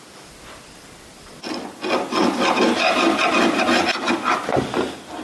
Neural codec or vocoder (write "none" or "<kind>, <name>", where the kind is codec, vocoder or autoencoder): none